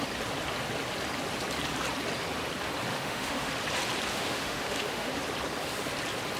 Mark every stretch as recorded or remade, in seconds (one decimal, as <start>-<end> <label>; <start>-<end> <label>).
0.0-2.9 recorded; 2.9-3.5 remade; 3.5-4.1 recorded; 4.1-5.1 remade; 5.1-6.4 recorded